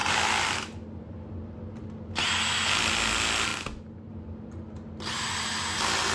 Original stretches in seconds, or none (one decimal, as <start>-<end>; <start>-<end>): 0.0-6.1